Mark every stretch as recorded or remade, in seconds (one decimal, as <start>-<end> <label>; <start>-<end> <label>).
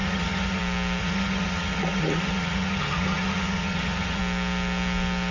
0.0-0.6 remade; 0.6-1.0 recorded; 1.0-4.2 remade; 4.2-5.3 recorded